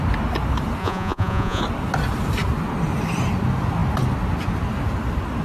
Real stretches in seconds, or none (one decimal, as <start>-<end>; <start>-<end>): 0.0-0.8; 1.6-5.4